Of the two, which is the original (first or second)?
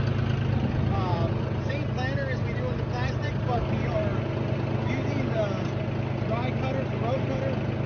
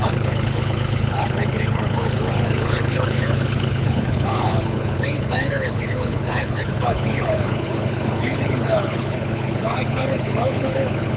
first